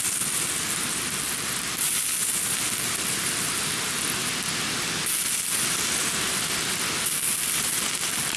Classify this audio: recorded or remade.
recorded